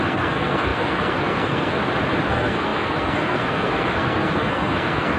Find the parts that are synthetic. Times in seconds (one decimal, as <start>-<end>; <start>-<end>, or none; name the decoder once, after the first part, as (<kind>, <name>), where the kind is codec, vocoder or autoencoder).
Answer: 0.0-1.8 (codec, SNAC); 2.3-5.2